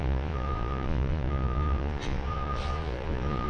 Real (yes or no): no